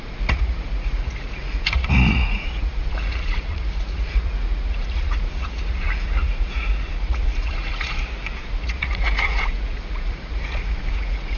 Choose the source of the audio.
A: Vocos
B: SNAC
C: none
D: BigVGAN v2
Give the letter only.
A